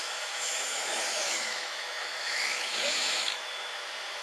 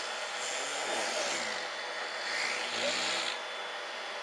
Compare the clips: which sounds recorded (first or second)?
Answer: second